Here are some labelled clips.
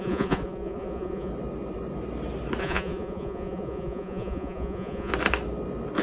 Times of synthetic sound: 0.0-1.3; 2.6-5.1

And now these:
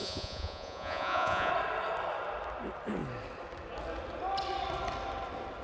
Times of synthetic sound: 0.0-1.5

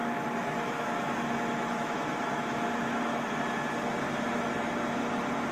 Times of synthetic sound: 0.0-3.3

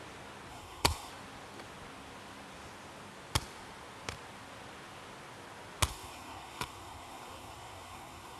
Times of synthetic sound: 0.5-1.1; 5.9-8.4

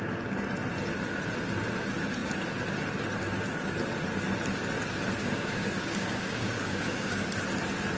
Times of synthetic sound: 5.2-7.3

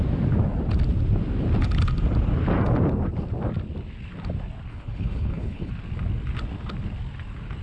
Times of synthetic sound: 4.7-5.7